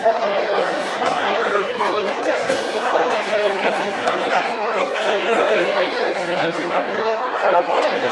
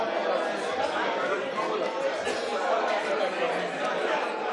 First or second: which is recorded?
second